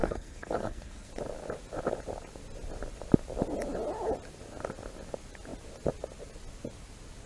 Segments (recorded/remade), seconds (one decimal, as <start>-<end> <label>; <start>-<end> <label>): 0.0-1.1 remade; 1.1-7.3 recorded